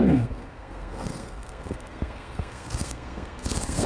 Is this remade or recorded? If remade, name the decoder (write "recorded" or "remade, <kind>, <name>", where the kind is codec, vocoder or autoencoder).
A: remade, codec, SNAC